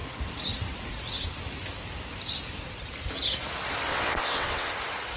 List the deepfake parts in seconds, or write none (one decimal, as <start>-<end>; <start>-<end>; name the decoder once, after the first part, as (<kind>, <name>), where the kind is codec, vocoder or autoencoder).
3.9-4.7 (vocoder, WaveNeXt)